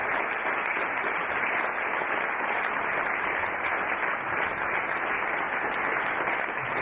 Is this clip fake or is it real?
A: real